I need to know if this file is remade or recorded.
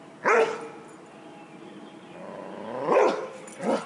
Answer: recorded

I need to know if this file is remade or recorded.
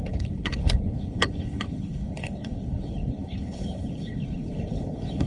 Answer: remade